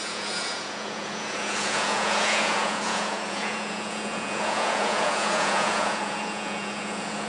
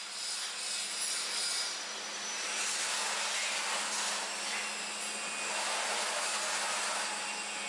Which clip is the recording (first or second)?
second